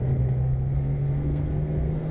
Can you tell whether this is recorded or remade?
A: remade